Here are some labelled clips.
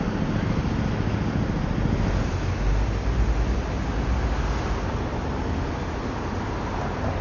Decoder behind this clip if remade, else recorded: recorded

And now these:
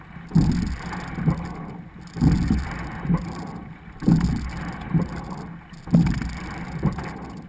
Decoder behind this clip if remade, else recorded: recorded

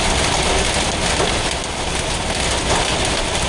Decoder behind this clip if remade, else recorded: recorded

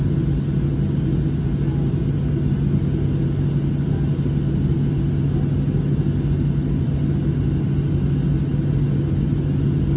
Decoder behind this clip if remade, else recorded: recorded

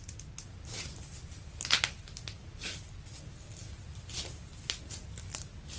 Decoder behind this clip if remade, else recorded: recorded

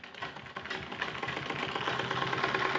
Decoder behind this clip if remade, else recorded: recorded